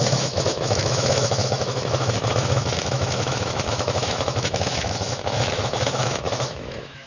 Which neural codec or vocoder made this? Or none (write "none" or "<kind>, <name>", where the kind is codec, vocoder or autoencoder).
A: autoencoder, DAC-VAE